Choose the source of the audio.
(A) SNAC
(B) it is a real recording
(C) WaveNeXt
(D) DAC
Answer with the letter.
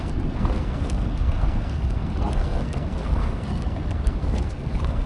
A